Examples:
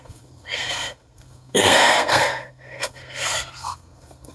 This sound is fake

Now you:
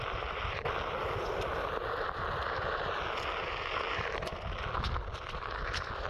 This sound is real